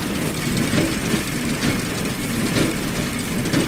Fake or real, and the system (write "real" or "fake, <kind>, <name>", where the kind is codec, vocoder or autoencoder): real